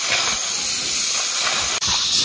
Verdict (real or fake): real